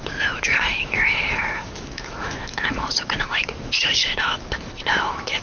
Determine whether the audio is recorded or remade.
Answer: remade